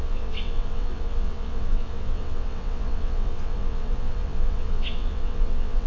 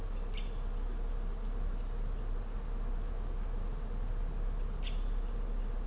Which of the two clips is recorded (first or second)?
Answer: second